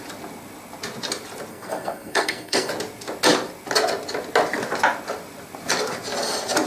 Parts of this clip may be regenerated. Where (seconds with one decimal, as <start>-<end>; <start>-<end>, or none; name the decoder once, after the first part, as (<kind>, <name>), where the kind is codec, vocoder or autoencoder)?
1.5-2.7 (codec, SNAC)